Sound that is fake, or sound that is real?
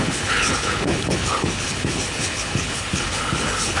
fake